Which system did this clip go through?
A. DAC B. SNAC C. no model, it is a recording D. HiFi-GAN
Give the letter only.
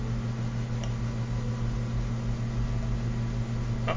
C